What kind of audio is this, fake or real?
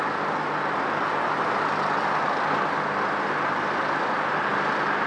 real